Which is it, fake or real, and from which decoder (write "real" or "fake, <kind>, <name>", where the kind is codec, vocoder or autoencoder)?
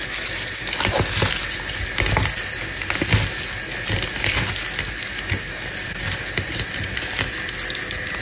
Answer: real